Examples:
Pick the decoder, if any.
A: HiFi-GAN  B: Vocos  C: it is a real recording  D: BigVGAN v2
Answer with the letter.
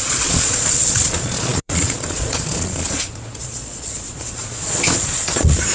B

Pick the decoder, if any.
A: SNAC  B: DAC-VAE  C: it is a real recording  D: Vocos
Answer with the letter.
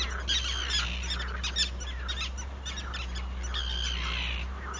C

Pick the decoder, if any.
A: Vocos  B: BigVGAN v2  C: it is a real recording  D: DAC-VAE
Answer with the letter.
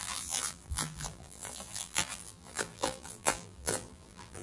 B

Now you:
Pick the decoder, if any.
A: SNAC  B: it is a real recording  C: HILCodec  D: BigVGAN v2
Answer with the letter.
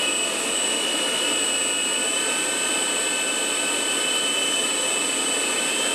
B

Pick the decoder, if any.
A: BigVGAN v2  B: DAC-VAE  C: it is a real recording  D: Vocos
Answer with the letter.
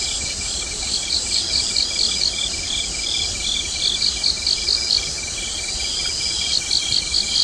C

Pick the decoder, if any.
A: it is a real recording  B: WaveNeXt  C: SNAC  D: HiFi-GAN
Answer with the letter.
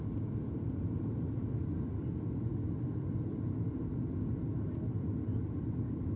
A